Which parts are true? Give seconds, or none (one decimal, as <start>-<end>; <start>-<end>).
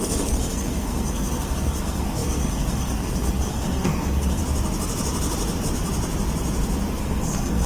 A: 4.4-7.0